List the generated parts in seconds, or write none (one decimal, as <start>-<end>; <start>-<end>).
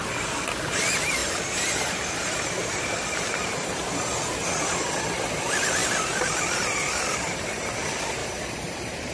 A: 1.2-3.9; 8.2-9.1